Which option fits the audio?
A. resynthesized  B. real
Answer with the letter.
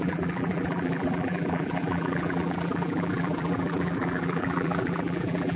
A